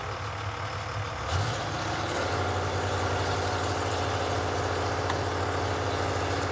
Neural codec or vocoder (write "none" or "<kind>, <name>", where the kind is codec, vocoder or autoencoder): none